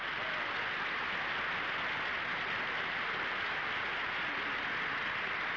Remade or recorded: recorded